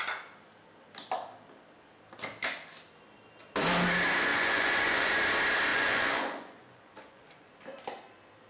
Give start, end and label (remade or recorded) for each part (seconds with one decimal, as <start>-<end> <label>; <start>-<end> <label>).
0.0-4.3 recorded; 4.3-5.1 remade; 5.1-5.7 recorded; 5.7-7.5 remade; 7.5-8.5 recorded